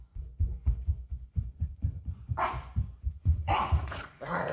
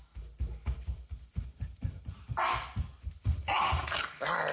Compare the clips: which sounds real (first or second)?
second